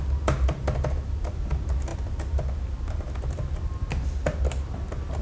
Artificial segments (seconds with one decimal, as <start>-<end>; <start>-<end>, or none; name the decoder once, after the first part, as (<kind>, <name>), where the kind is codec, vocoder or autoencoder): none